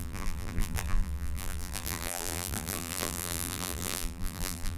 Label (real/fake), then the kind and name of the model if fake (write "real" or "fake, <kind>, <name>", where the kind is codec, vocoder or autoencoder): fake, vocoder, BigVGAN v2